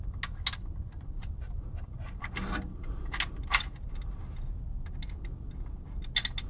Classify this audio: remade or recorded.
recorded